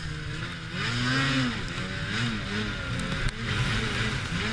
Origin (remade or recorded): recorded